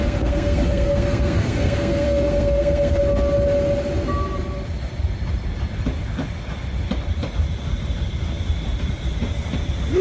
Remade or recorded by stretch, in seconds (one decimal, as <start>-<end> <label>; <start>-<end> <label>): 0.0-3.0 remade; 3.0-10.0 recorded